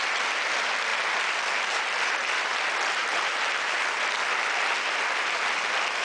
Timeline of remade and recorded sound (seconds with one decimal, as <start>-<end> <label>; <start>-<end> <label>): 0.0-6.0 recorded